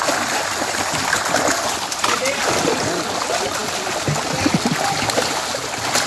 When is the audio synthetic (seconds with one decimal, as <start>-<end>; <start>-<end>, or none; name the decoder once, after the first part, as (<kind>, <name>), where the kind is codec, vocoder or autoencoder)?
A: none